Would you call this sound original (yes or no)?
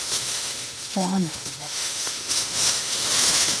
no